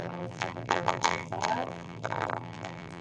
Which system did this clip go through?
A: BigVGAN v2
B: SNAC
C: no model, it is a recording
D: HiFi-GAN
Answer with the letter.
A